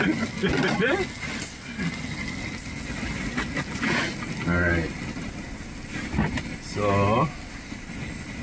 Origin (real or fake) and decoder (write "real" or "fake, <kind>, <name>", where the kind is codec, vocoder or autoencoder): real